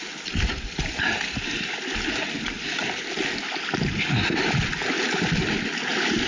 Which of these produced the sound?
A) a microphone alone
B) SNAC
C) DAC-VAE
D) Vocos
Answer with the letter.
A